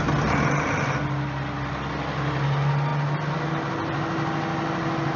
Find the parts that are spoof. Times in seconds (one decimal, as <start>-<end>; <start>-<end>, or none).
none